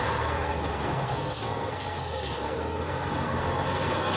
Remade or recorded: remade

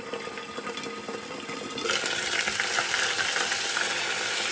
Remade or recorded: recorded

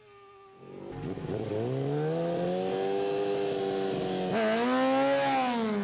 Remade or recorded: recorded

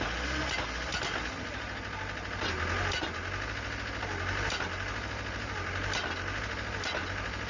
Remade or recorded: recorded